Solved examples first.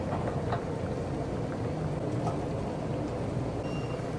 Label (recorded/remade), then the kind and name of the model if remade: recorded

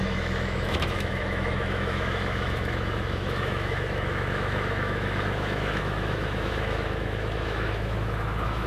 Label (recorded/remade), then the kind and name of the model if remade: remade, autoencoder, DAC-VAE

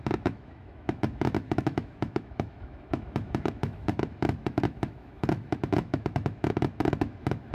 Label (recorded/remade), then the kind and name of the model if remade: remade, autoencoder, DAC-VAE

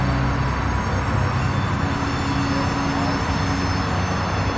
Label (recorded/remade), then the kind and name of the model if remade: recorded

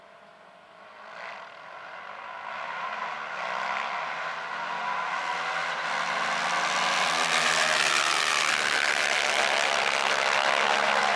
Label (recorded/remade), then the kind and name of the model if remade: recorded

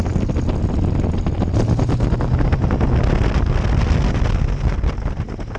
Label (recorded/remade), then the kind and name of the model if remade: recorded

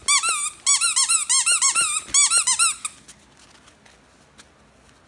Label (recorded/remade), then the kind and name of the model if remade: recorded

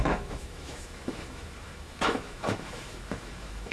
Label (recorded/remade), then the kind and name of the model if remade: remade, autoencoder, DAC-VAE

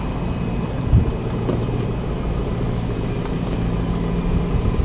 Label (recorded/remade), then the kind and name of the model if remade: recorded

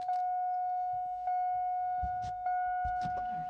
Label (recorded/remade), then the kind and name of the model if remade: remade, autoencoder, DAC-VAE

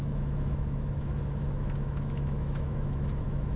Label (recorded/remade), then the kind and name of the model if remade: remade, autoencoder, DAC-VAE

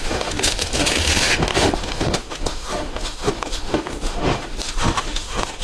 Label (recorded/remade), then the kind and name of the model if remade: remade, autoencoder, DAC-VAE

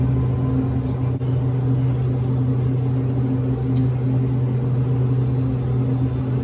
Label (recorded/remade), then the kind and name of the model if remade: recorded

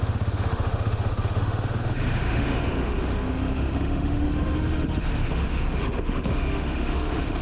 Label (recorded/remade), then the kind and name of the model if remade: remade, autoencoder, DAC-VAE